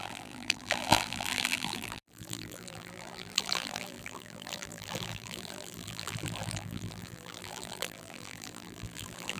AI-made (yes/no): yes